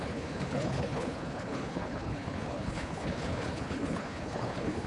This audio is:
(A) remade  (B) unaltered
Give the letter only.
A